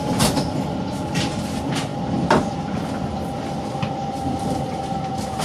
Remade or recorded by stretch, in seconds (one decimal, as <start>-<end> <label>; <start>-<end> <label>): 0.0-5.4 recorded